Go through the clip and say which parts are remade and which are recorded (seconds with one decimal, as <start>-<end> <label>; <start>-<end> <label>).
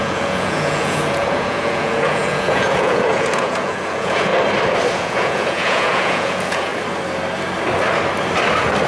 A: 0.0-4.3 remade; 4.3-4.9 recorded; 4.9-6.7 remade; 6.7-8.9 recorded